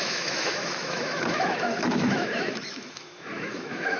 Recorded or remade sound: remade